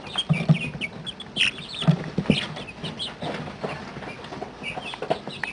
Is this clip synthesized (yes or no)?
no